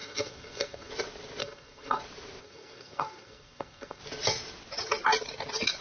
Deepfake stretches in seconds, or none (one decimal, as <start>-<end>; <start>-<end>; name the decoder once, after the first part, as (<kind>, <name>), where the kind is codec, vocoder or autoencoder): 0.0-0.9 (codec, SNAC); 1.4-2.0; 2.4-4.0